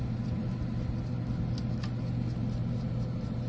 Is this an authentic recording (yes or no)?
yes